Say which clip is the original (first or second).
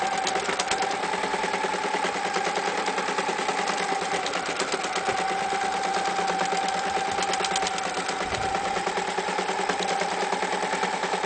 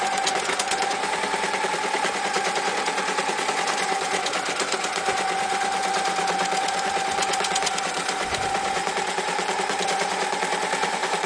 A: first